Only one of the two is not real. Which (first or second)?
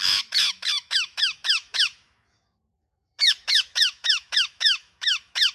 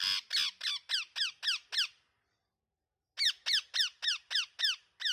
first